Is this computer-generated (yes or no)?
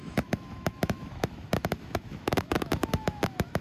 yes